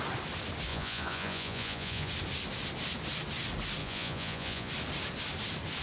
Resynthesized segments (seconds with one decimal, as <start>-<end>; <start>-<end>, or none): 0.7-2.1; 3.8-4.7